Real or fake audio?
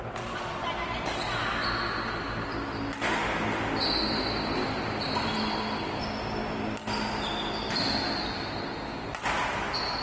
real